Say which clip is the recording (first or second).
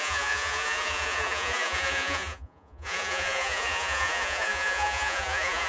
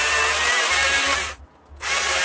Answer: second